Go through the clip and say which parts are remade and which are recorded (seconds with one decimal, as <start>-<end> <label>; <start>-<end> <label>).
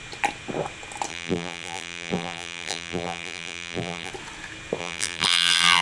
0.0-1.1 recorded; 1.1-4.1 remade; 4.1-4.8 recorded; 4.8-5.8 remade